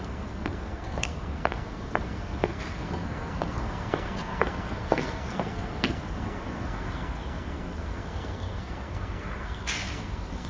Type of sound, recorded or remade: remade